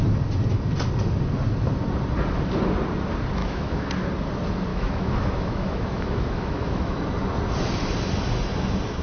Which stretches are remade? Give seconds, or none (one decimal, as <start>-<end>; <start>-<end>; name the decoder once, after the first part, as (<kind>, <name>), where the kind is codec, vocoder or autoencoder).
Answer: 3.4-3.9 (autoencoder, DAC-VAE); 4.7-7.0